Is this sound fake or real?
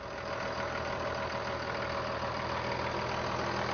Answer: real